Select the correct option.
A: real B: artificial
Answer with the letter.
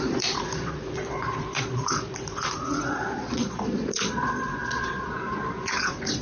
B